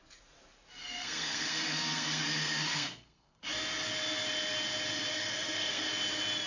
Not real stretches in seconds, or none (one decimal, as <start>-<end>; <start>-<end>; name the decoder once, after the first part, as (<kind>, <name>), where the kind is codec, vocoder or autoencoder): 0.8-3.4 (codec, SNAC); 5.1-5.9